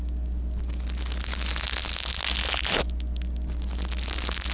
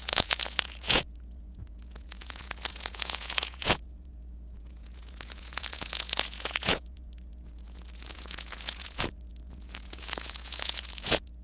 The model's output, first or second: second